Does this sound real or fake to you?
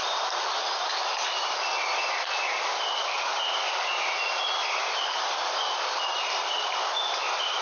real